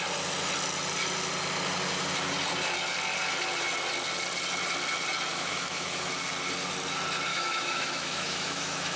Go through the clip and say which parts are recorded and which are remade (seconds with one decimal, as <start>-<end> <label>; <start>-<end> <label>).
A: 0.0-5.3 recorded; 5.3-6.1 remade; 6.1-7.3 recorded; 7.3-9.0 remade